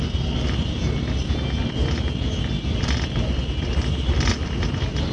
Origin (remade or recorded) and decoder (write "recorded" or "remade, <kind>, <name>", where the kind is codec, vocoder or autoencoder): recorded